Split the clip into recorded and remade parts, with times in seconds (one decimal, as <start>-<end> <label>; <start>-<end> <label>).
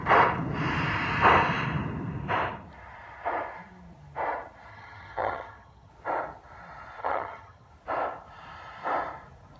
0.0-4.7 recorded; 4.7-5.9 remade; 5.9-7.0 recorded; 7.0-7.7 remade; 7.7-9.6 recorded